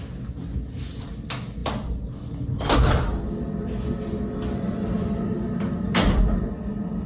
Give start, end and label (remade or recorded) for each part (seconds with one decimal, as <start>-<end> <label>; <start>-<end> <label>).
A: 0.0-7.1 recorded